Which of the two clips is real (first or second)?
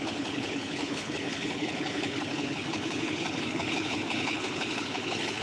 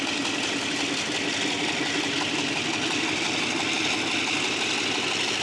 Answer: second